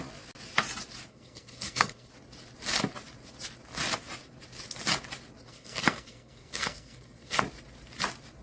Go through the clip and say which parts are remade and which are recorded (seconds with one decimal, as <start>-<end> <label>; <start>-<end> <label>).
0.0-1.1 recorded; 1.1-2.1 remade; 2.1-5.5 recorded; 5.5-7.4 remade; 7.4-8.4 recorded